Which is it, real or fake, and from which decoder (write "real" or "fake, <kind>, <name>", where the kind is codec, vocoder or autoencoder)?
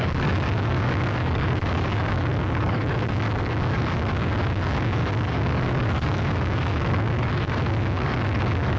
fake, codec, DAC